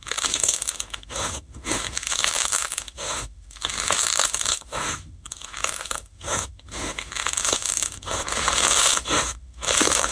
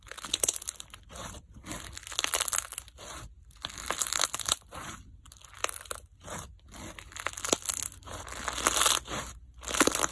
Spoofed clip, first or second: first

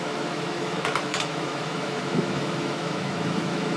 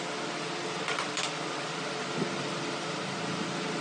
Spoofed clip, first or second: first